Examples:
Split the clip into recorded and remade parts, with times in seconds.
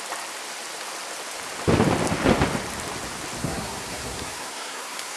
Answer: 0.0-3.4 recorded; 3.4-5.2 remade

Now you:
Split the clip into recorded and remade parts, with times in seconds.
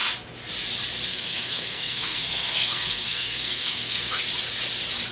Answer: 0.0-1.1 recorded; 1.1-4.2 remade; 4.2-5.1 recorded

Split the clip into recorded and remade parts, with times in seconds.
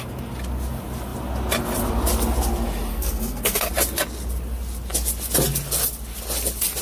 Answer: 0.0-2.9 recorded; 2.9-3.7 remade; 3.7-6.8 recorded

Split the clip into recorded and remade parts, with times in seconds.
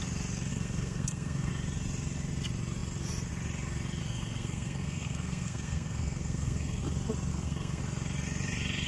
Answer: 0.0-0.5 recorded; 0.5-1.5 remade; 1.5-4.0 recorded; 4.0-6.8 remade; 6.8-7.3 recorded; 7.3-7.8 remade; 7.8-8.9 recorded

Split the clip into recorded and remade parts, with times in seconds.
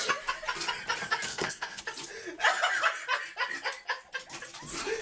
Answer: 0.0-1.3 recorded; 1.3-1.8 remade; 1.8-5.0 recorded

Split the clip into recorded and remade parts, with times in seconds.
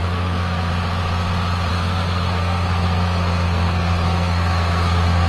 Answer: 0.0-0.7 remade; 0.7-1.7 recorded; 1.7-5.3 remade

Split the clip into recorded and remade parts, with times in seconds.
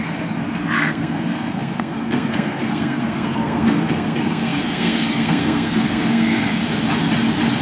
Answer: 0.0-6.6 remade; 6.6-7.6 recorded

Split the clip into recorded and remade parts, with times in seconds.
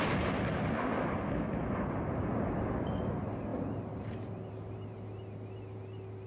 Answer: 0.0-6.3 recorded